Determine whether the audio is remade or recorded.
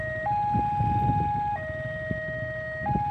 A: recorded